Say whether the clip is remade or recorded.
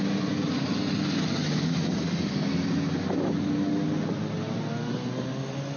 recorded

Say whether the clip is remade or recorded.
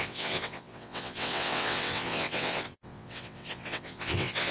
remade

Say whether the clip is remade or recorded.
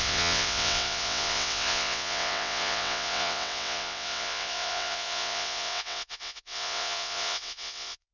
remade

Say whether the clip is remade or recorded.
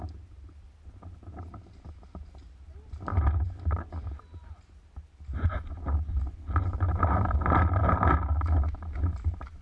recorded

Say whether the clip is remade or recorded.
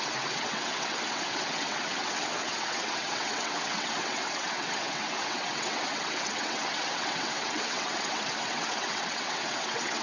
remade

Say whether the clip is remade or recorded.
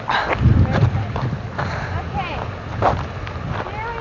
recorded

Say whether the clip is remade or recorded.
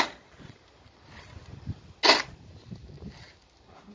recorded